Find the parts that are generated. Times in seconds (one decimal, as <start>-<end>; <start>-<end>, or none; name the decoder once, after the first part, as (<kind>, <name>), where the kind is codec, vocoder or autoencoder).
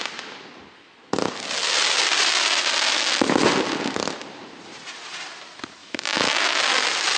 5.8-6.6 (autoencoder, DAC-VAE)